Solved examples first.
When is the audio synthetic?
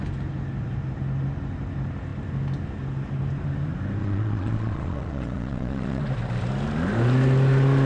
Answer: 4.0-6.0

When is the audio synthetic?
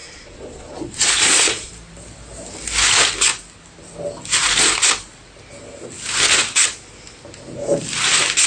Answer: 0.0-1.7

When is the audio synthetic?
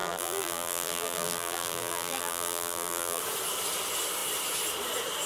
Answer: 0.0-3.2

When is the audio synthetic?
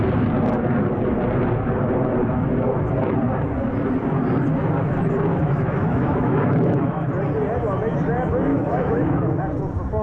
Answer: 5.3-7.1; 8.5-9.4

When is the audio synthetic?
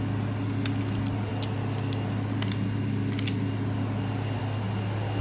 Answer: none